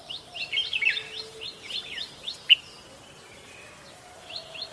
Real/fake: real